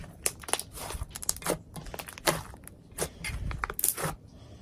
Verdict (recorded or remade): recorded